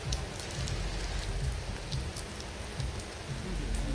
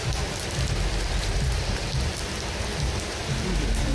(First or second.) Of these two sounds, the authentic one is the first